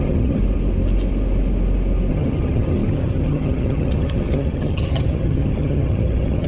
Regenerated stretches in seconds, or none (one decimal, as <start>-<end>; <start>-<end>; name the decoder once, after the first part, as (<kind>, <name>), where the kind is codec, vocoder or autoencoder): 0.0-0.4 (vocoder, HiFi-GAN); 2.1-6.5